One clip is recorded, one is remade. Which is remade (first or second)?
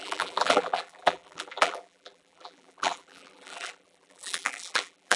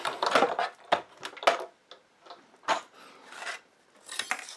first